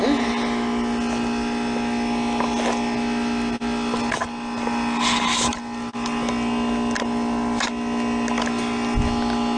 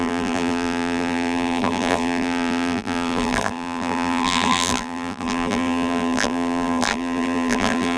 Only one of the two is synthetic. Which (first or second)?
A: second